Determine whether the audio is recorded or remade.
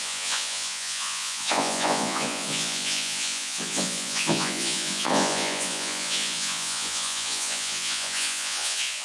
remade